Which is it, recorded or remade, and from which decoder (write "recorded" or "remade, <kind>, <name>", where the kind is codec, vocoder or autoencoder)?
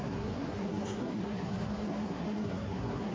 remade, codec, SNAC